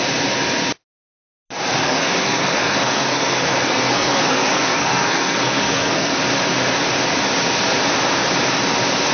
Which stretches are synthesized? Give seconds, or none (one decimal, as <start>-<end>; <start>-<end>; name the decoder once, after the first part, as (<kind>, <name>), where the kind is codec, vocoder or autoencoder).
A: 1.8-6.2 (codec, SNAC)